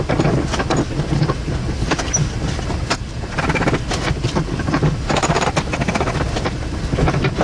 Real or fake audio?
real